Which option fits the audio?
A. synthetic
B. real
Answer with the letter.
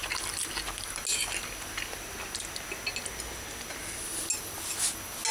B